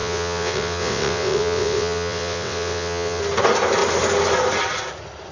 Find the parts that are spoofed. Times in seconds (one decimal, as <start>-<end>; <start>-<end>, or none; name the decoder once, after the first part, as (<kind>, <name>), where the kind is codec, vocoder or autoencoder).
0.0-3.2 (vocoder, WaveNeXt)